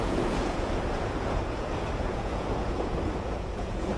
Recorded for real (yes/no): no